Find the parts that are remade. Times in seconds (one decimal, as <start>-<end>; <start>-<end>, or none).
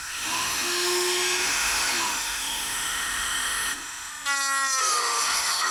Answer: 0.0-4.1; 4.8-5.7